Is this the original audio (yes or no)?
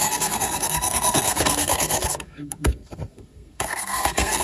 no